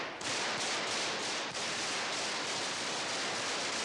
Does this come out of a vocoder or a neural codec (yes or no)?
no